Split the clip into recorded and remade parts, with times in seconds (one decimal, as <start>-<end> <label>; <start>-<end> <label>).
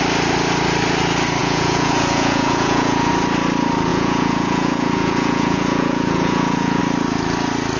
0.0-1.4 recorded; 1.4-3.1 remade; 3.1-3.9 recorded; 3.9-6.8 remade; 6.8-7.8 recorded